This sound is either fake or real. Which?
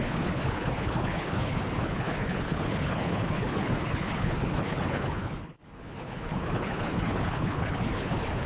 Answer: fake